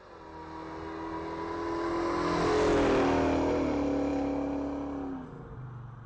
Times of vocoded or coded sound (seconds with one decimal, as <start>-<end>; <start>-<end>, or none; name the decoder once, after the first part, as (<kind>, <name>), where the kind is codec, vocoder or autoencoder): none